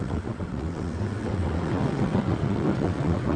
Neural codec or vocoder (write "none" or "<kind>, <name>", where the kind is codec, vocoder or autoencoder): vocoder, WaveNeXt